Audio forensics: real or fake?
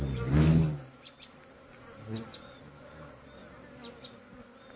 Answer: real